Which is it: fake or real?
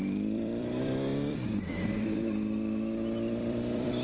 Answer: fake